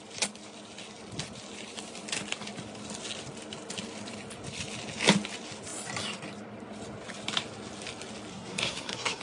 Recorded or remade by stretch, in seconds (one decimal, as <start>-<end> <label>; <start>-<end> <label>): 0.0-8.3 recorded; 8.3-9.2 remade

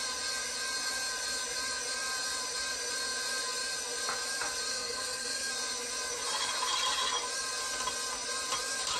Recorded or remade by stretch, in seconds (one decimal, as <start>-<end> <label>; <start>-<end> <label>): 0.0-4.7 recorded; 4.7-5.5 remade; 5.5-9.0 recorded

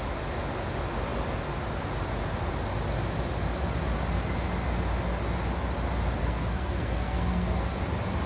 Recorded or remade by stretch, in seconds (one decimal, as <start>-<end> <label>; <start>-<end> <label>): 0.0-6.2 recorded; 6.2-7.8 remade; 7.8-8.3 recorded

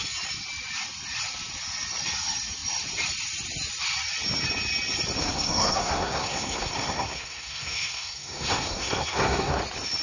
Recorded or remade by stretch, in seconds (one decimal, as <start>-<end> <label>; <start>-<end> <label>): 0.0-5.2 recorded; 5.2-9.6 remade; 9.6-10.0 recorded

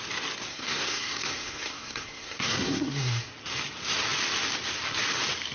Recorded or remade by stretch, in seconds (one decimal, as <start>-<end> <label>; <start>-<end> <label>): 0.0-0.5 recorded; 0.5-3.3 remade; 3.3-5.5 recorded

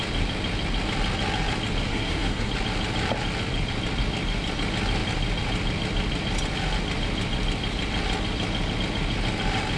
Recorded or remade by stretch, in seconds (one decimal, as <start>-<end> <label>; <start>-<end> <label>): 0.0-1.9 recorded; 1.9-2.5 remade; 2.5-9.8 recorded

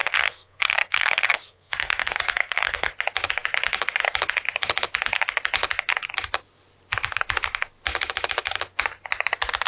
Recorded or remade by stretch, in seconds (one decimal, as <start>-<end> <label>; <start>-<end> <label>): 0.0-2.9 remade; 2.9-9.7 recorded

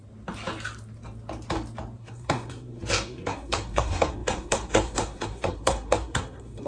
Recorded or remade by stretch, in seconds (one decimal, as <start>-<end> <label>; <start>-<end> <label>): 0.0-2.0 recorded; 2.0-6.7 remade